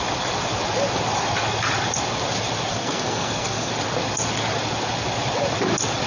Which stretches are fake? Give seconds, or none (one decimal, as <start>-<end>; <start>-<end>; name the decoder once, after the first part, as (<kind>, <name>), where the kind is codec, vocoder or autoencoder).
2.7-3.7 (codec, SNAC)